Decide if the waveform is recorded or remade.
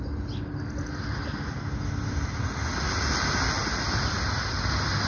recorded